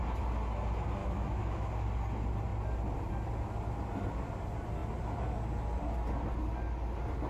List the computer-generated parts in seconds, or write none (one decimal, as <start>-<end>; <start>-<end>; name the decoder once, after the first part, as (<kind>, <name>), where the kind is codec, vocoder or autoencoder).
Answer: 1.0-1.7 (autoencoder, DAC-VAE)